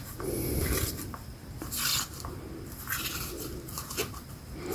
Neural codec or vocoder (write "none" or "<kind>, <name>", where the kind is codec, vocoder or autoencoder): vocoder, BigVGAN v2